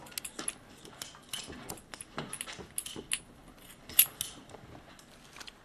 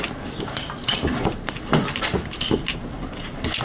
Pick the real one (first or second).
first